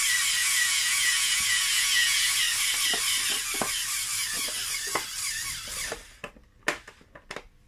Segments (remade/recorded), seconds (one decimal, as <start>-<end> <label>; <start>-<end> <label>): 0.0-0.4 recorded; 0.4-2.4 remade; 2.4-7.7 recorded